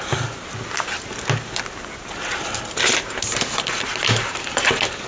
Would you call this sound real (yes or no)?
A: yes